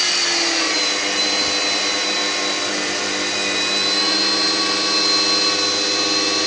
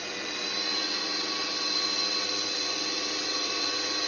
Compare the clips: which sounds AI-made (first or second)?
second